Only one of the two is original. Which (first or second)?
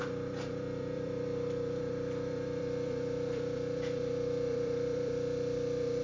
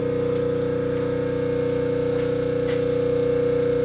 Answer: second